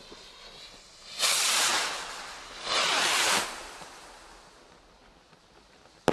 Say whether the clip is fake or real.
real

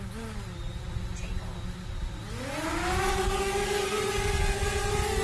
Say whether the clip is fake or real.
real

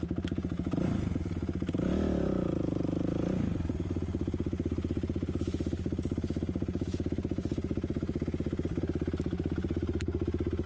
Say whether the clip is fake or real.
real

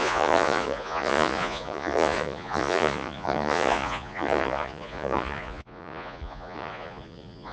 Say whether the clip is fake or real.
fake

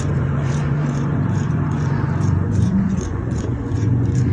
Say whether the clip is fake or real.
fake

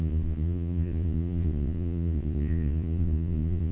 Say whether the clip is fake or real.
fake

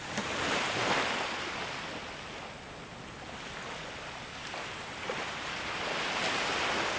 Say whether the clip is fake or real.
real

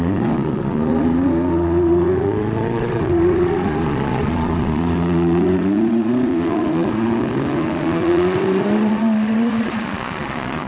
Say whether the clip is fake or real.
fake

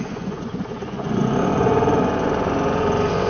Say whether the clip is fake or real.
fake